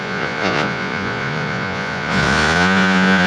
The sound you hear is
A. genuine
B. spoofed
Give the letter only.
B